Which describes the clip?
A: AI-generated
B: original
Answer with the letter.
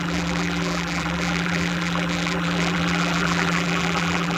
A